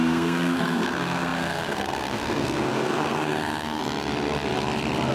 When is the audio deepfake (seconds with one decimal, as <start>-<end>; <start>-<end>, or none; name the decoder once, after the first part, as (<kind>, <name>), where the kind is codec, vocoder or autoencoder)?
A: 0.0-3.8 (codec, SNAC)